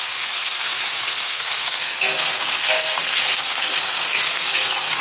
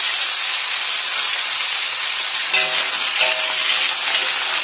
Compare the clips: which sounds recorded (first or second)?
second